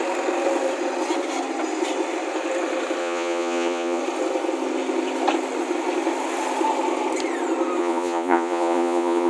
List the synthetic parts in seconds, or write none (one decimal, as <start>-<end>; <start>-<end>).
3.0-4.0; 7.8-9.3

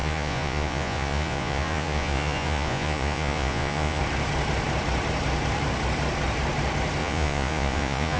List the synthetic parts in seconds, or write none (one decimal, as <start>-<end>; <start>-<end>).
0.0-4.0; 7.0-8.2

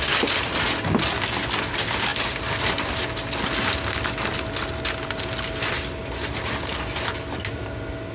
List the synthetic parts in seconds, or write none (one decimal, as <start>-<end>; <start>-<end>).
none

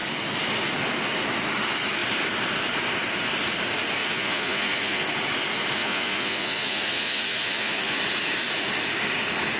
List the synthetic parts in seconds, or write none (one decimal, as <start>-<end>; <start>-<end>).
4.0-5.0; 5.8-8.0

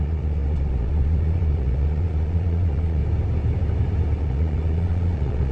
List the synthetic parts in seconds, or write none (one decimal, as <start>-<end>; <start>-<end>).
0.0-3.0; 4.2-5.5

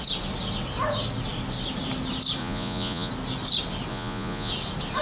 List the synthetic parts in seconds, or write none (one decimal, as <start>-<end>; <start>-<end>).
2.4-3.1; 3.9-4.5

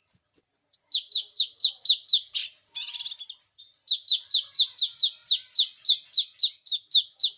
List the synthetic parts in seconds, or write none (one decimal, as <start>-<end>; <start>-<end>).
none

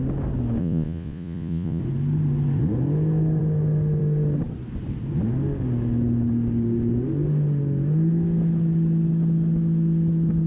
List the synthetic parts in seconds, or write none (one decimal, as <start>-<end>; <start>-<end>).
0.6-1.8